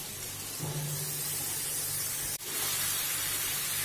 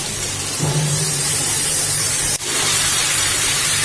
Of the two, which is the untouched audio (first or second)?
first